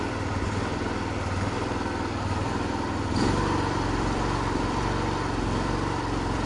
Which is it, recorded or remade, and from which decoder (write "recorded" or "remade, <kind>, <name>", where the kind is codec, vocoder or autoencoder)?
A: remade, vocoder, BigVGAN v2